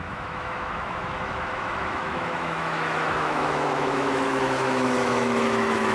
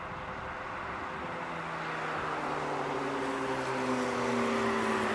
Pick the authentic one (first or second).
second